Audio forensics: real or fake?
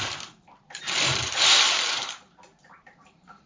fake